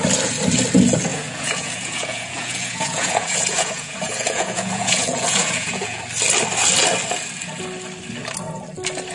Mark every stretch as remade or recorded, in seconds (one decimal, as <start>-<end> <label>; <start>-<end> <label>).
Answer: 0.0-1.1 recorded; 1.1-6.0 remade; 6.0-9.1 recorded